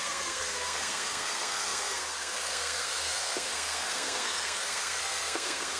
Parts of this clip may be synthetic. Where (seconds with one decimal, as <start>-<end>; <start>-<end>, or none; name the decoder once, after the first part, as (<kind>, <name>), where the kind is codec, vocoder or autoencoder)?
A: 0.0-5.8 (codec, SNAC)